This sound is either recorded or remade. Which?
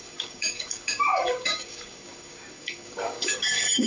remade